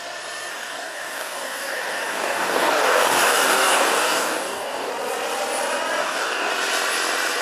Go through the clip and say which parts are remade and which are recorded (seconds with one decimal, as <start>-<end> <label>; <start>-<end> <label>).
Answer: 0.0-0.5 recorded; 0.5-4.9 remade; 4.9-6.0 recorded; 6.0-6.5 remade; 6.5-7.4 recorded